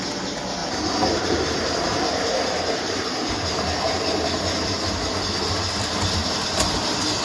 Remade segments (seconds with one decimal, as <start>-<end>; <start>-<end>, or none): 0.6-4.9; 6.2-7.2